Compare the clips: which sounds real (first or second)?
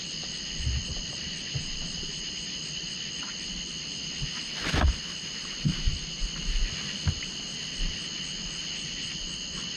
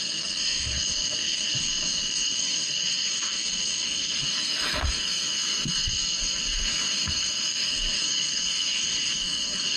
first